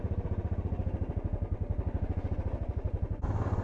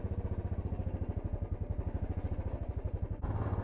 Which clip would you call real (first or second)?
second